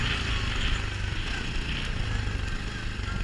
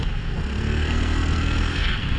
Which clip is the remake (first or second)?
second